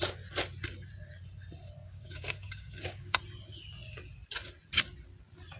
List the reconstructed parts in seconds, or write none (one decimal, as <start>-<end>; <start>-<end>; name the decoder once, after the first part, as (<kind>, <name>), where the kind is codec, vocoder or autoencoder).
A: 1.8-3.2 (codec, DAC)